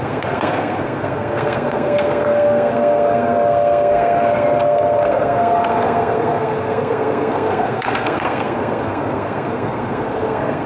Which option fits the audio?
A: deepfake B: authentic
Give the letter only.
A